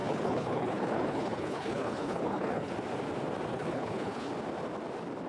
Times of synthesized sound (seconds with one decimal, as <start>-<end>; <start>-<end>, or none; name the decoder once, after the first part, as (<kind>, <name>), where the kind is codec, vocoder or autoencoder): 0.0-2.7 (codec, HILCodec); 3.5-4.3